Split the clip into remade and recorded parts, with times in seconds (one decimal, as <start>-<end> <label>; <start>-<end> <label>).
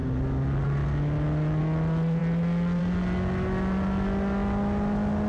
0.0-5.3 recorded